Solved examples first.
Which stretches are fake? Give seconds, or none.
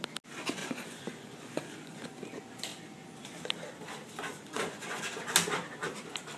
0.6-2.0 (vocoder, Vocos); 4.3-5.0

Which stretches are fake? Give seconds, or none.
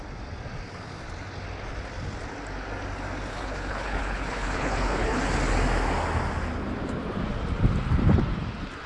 3.3-5.2 (codec, HILCodec)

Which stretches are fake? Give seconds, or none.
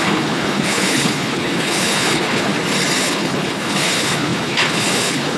0.0-2.5 (codec, HILCodec); 3.0-5.4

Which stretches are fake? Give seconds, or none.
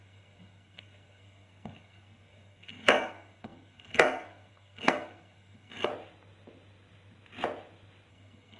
0.0-5.9 (codec, SNAC); 8.1-8.6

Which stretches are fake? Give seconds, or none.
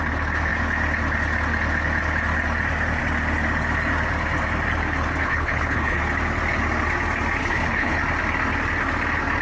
5.2-6.0 (codec, HILCodec); 7.4-8.0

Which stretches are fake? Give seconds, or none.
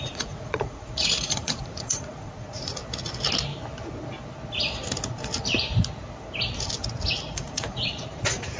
0.0-2.8 (vocoder, Vocos); 7.3-8.6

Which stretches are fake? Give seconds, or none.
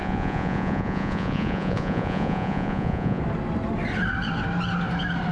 0.0-3.2 (vocoder, Vocos)